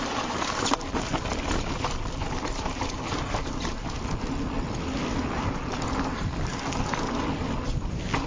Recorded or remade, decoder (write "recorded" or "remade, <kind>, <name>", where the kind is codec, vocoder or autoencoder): recorded